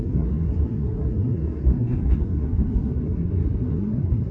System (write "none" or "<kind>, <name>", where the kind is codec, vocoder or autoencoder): codec, SNAC